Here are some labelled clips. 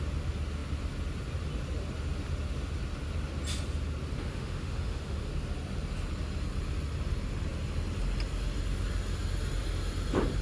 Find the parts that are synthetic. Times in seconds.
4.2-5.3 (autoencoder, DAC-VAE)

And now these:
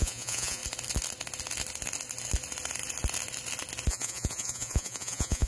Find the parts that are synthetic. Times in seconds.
0.0-0.6 (vocoder, Vocos); 3.9-5.5

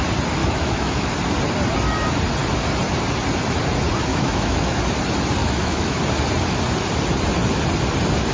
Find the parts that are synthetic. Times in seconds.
0.4-1.1 (autoencoder, DAC-VAE); 4.1-4.8; 5.4-6.0

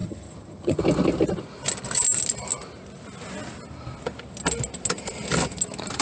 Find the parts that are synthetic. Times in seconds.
0.0-0.8 (vocoder, HiFi-GAN)

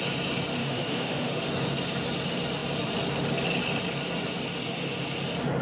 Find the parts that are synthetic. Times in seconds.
0.6-1.4 (autoencoder, DAC-VAE)

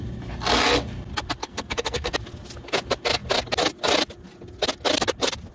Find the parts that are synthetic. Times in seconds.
1.4-2.1 (codec, SNAC)

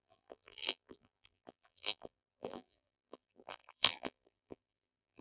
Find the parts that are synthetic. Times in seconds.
0.0-5.2 (vocoder, BigVGAN v2)

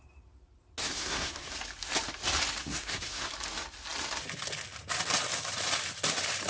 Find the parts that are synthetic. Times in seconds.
0.8-1.5 (codec, SNAC); 2.6-3.3